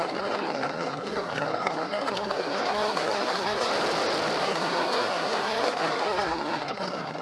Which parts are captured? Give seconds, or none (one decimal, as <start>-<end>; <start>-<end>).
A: 3.7-4.4